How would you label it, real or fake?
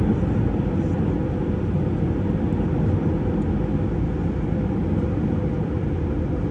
real